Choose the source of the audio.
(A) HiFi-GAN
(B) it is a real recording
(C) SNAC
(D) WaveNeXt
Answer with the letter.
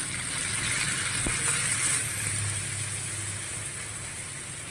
B